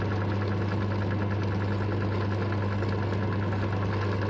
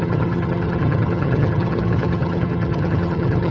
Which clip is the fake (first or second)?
second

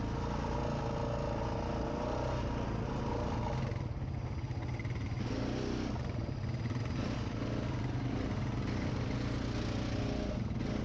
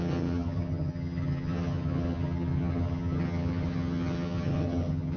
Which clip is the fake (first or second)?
second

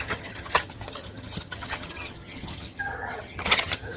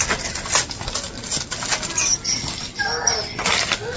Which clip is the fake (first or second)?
first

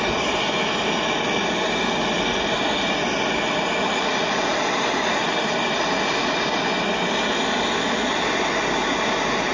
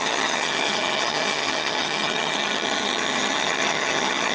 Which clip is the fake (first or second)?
second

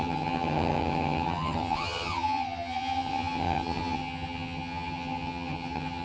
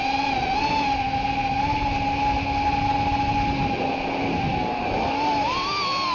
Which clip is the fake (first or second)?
first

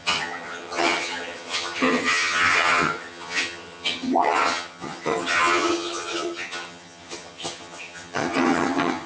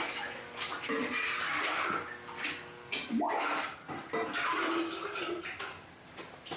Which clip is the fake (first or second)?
first